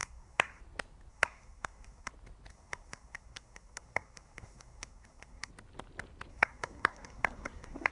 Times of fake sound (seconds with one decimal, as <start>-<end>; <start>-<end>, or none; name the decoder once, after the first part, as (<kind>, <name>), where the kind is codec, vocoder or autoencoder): 0.0-0.6 (codec, SNAC); 1.1-2.1; 2.5-5.5; 6.3-7.9